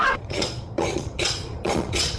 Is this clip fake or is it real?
fake